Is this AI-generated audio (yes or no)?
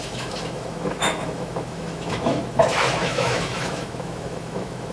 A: yes